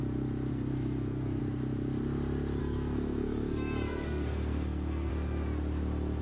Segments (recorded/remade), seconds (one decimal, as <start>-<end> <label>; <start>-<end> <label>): 0.0-0.5 recorded; 0.5-1.4 remade; 1.4-2.6 recorded; 2.6-5.1 remade; 5.1-6.2 recorded